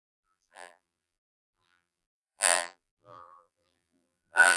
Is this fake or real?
fake